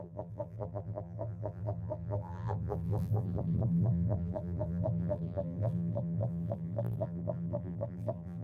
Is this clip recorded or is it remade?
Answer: remade